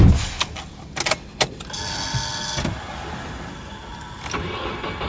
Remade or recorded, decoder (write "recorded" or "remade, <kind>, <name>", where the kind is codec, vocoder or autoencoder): recorded